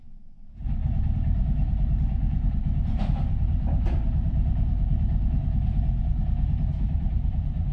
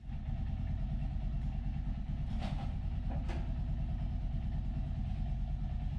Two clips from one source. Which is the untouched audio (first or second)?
second